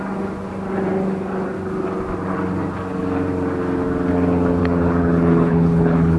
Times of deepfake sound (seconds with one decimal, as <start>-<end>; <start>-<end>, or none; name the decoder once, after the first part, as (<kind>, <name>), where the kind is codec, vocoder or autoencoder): 4.6-6.2 (codec, HILCodec)